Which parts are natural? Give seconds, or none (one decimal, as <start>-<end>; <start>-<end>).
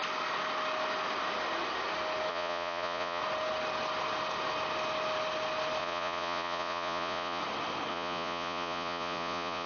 0.0-2.3; 3.2-5.8; 7.4-7.9